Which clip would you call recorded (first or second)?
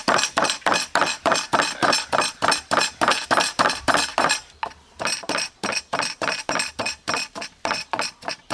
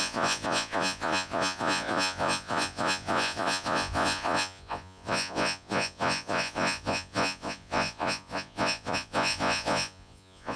first